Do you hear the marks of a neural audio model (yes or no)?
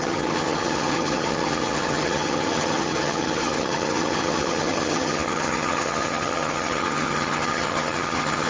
yes